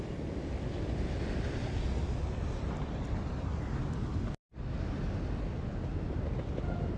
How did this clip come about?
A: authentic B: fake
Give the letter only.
A